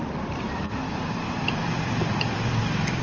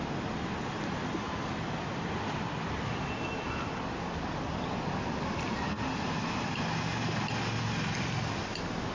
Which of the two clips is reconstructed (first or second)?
first